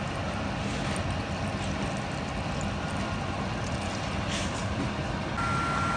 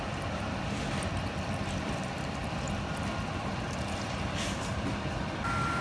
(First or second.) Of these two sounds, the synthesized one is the second